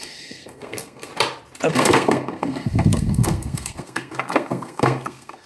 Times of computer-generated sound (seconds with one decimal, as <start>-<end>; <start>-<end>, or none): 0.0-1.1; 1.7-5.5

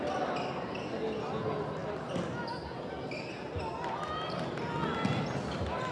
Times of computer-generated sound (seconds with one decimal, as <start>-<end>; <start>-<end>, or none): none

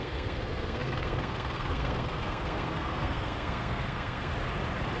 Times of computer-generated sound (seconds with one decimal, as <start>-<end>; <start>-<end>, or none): 0.0-4.3